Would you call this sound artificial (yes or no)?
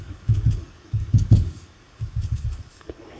yes